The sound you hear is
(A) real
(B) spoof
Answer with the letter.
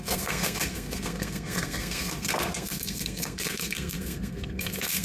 B